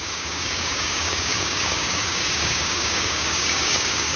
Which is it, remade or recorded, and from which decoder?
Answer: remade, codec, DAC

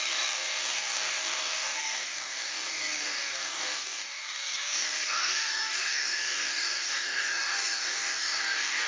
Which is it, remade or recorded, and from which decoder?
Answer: remade, codec, DAC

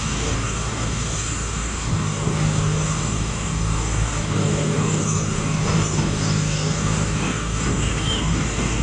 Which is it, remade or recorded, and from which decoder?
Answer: remade, codec, DAC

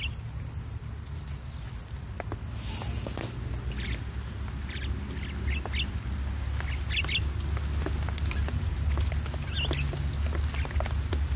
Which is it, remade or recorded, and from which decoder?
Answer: recorded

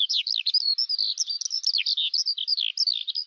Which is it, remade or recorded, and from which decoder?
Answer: recorded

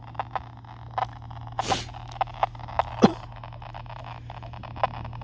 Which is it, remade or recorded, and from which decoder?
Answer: recorded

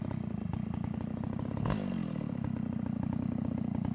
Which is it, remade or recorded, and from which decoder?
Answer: recorded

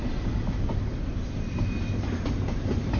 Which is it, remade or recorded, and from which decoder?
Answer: recorded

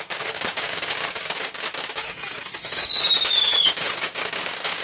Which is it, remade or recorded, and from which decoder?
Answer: remade, codec, DAC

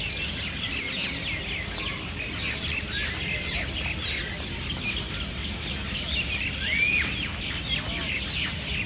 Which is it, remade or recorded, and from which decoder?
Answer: recorded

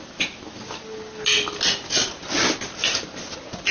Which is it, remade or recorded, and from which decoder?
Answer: recorded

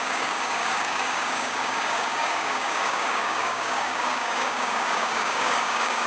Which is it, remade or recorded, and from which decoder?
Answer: remade, codec, DAC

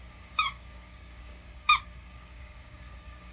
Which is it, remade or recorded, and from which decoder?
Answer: remade, codec, DAC